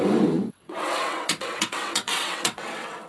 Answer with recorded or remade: remade